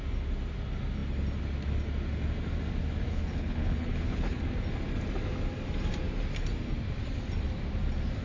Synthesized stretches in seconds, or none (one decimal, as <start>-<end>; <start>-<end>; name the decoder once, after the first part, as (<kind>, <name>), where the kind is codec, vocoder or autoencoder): 3.1-4.4 (codec, HILCodec)